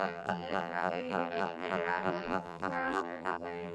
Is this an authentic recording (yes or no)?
no